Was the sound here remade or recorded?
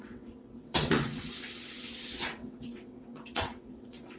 remade